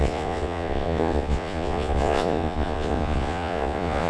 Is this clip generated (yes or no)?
yes